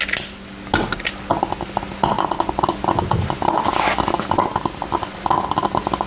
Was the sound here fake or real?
real